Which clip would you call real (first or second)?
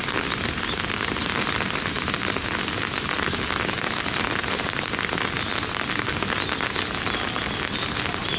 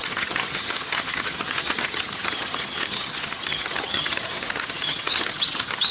first